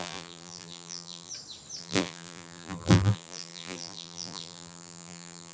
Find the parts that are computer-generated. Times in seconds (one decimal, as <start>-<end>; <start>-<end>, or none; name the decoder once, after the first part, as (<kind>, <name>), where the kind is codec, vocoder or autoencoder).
0.0-1.3 (vocoder, BigVGAN v2); 1.8-5.5